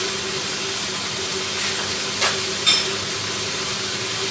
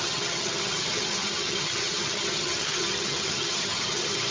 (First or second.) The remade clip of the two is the second